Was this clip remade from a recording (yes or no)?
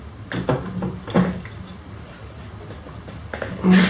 no